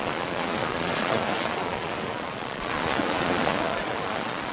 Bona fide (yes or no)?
no